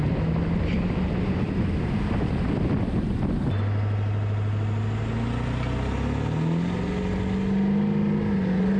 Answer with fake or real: real